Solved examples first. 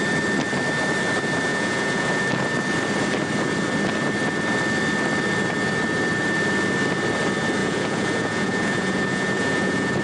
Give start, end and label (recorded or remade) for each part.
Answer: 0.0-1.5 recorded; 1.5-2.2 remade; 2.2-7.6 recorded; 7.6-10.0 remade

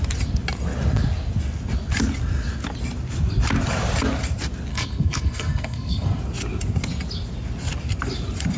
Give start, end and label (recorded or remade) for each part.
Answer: 0.0-4.7 recorded; 4.7-6.2 remade; 6.2-8.6 recorded

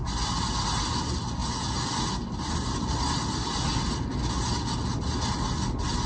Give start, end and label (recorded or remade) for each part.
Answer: 0.0-6.1 recorded

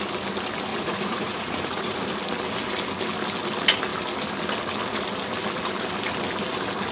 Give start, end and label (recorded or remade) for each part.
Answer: 0.0-0.7 recorded; 0.7-2.0 remade; 2.0-6.9 recorded

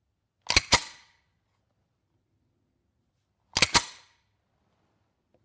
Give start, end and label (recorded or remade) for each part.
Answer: 0.0-5.4 recorded

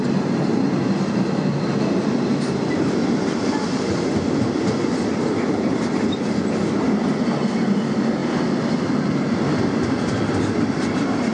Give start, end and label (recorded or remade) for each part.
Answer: 0.0-11.3 recorded

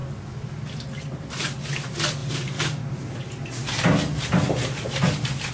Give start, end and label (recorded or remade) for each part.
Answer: 0.0-5.5 recorded